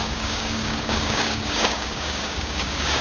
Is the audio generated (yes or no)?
yes